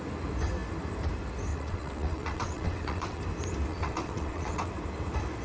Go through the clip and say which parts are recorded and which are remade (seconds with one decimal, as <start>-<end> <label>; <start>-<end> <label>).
0.0-1.5 recorded; 1.5-3.2 remade; 3.2-3.7 recorded; 3.7-4.7 remade; 4.7-5.4 recorded